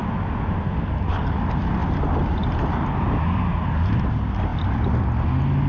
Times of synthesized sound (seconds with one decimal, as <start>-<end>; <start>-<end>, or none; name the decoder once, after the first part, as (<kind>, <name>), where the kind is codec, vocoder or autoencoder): none